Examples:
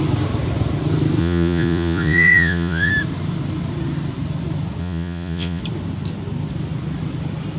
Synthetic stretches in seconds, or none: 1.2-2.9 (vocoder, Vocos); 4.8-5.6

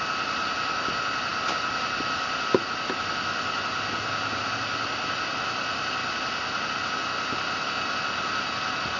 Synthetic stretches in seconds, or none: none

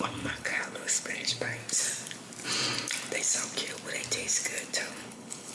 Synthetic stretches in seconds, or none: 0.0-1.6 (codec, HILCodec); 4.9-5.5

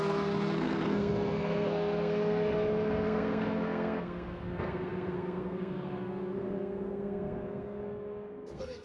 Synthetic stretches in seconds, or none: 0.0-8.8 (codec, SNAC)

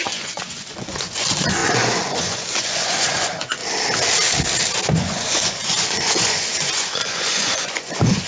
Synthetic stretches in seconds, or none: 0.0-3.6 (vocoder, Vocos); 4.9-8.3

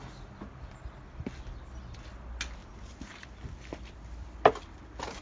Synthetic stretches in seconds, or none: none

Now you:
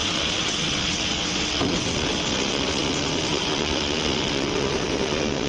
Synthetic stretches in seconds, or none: 0.0-5.5 (vocoder, WaveNeXt)

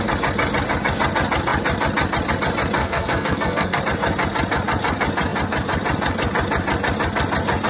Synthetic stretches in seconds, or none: 2.8-3.8 (codec, SNAC)